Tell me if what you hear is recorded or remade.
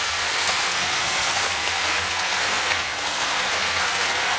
remade